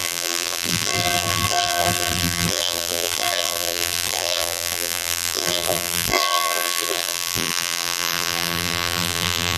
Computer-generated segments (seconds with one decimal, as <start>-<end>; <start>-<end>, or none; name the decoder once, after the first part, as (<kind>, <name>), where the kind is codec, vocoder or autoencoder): 0.0-9.6 (vocoder, BigVGAN v2)